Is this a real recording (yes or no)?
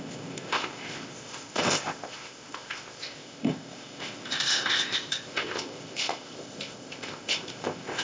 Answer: no